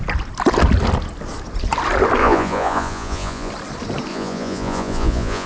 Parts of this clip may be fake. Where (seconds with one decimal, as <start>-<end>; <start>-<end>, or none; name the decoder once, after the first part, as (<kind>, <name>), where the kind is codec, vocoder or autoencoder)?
2.2-3.5 (vocoder, Vocos); 4.1-5.5